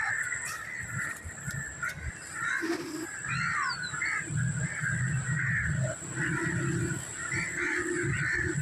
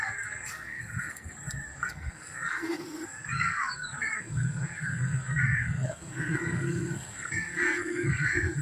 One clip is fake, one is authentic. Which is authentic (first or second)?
first